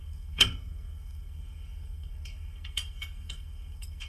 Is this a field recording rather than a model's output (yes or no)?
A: no